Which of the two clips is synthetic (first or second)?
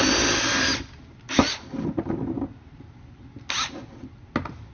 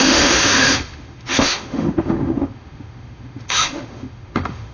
second